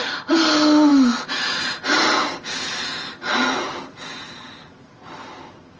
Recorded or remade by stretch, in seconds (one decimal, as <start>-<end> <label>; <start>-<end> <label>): 0.0-0.9 recorded; 0.9-1.6 remade; 1.6-5.8 recorded